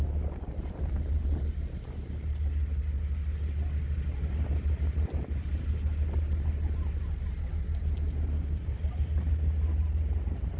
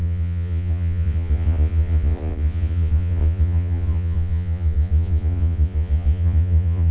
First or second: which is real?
first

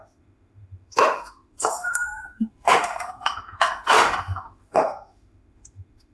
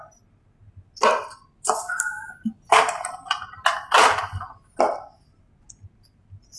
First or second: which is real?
second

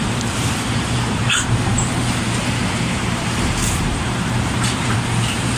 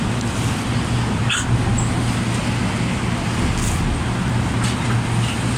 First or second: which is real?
second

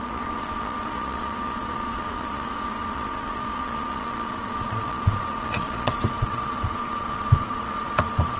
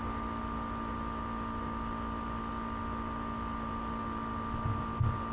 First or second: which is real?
second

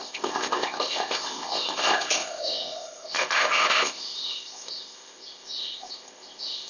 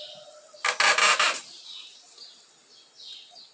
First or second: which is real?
second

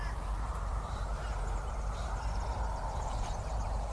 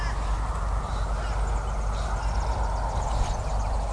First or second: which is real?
second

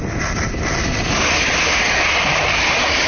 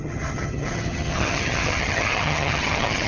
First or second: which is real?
first